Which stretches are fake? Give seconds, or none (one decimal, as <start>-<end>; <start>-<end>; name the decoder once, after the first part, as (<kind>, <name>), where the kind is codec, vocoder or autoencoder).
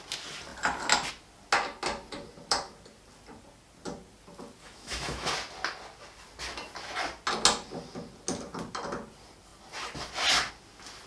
4.6-5.3 (autoencoder, DAC-VAE)